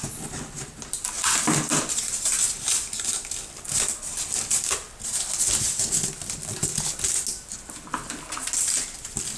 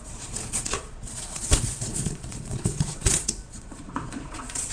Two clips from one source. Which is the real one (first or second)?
first